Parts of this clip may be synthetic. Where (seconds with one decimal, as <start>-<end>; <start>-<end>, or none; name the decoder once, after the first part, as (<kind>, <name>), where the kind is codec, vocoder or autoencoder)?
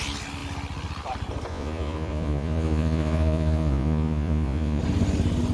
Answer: 1.5-4.8 (vocoder, Vocos)